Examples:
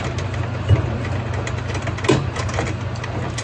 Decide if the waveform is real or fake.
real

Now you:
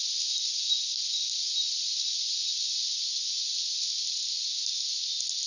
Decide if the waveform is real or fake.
real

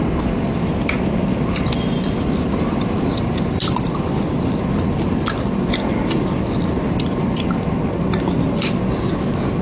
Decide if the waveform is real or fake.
real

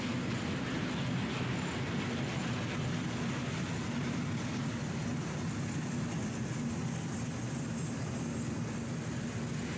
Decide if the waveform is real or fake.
real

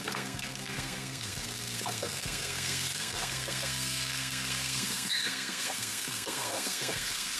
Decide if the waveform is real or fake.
fake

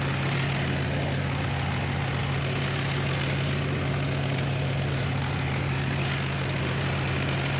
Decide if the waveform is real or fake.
real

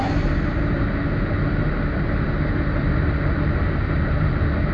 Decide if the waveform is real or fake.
real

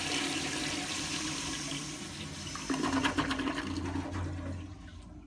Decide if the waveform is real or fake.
real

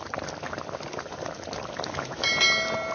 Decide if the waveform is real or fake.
real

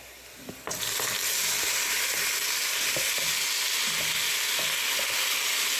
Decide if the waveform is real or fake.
real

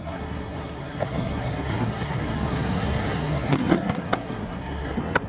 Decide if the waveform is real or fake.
fake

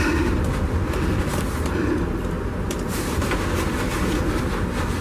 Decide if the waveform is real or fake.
fake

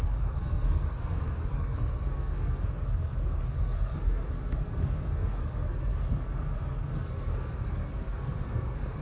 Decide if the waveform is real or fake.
fake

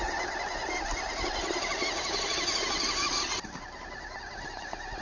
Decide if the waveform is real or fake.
real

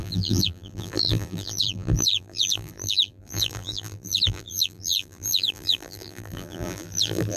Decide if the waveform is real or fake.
fake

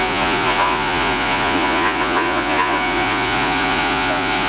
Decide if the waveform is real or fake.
fake